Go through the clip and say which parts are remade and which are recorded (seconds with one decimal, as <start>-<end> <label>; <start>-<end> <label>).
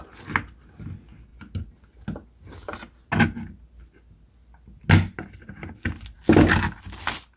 0.0-7.4 recorded